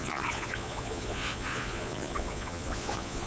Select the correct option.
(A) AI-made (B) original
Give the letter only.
A